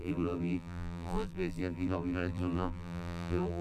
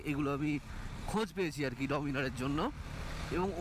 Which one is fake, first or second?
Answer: first